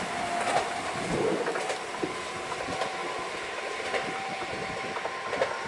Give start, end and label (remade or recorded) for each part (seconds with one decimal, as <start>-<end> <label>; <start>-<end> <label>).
0.0-3.0 recorded; 3.0-4.7 remade; 4.7-5.7 recorded